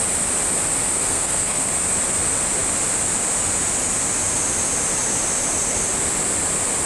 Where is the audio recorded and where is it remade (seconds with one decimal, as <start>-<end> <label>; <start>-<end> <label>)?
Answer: 0.0-1.1 recorded; 1.1-1.7 remade; 1.7-6.9 recorded